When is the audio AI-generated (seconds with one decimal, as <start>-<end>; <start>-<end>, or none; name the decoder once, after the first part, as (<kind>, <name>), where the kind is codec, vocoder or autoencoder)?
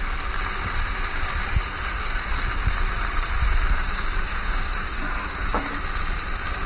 1.4-2.4 (codec, DAC); 3.4-5.8